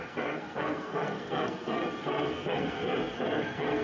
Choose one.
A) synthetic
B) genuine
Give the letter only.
A